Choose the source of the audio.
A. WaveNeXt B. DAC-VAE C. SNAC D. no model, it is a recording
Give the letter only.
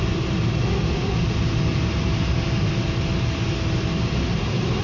D